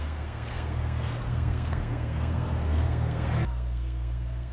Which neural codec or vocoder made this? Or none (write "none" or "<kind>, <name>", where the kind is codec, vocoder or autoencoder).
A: codec, SNAC